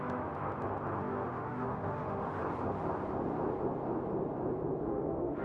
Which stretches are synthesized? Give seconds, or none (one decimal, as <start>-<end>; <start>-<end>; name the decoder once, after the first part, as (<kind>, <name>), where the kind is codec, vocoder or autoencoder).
0.0-0.5 (autoencoder, DAC-VAE); 1.0-2.4; 4.8-5.4

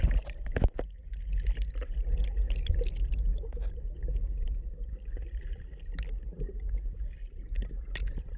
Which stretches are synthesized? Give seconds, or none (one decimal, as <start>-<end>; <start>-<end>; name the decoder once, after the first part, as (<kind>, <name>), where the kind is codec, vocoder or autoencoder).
none

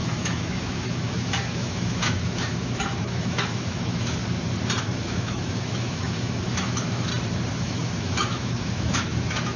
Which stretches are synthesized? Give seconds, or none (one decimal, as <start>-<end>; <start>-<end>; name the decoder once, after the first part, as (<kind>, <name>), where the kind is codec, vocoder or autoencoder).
0.0-4.2 (autoencoder, DAC-VAE); 4.8-7.1; 7.6-9.6

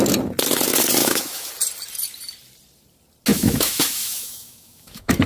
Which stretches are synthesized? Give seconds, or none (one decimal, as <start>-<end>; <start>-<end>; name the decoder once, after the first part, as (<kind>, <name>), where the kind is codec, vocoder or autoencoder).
1.0-1.5 (autoencoder, DAC-VAE); 3.3-5.3

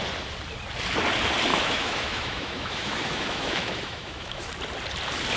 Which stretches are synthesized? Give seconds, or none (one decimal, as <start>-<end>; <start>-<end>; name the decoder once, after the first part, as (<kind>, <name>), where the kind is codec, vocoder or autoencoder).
1.5-4.5 (autoencoder, DAC-VAE)

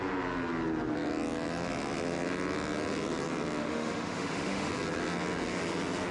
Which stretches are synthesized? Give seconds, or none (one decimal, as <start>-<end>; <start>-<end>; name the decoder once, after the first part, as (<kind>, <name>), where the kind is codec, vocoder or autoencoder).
3.6-4.7 (autoencoder, DAC-VAE)